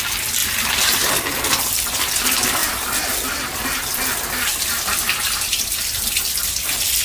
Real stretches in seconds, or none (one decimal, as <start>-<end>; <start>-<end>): 0.0-7.0